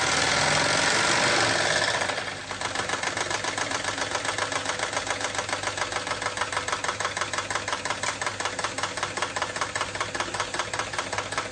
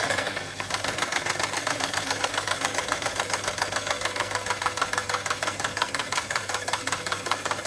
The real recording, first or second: first